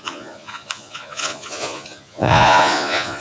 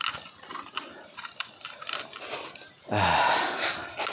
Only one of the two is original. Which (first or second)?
second